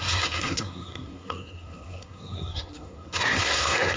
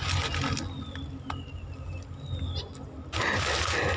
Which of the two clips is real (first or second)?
second